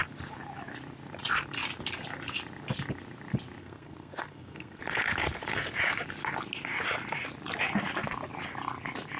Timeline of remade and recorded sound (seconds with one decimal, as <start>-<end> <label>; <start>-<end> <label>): 0.0-3.6 recorded; 3.6-4.8 remade; 4.8-9.2 recorded